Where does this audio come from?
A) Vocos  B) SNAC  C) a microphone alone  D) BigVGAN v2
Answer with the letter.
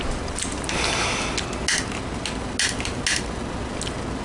C